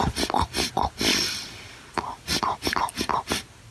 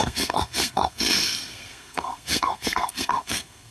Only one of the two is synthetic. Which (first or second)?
second